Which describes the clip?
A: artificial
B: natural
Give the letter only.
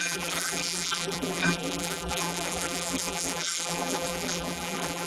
A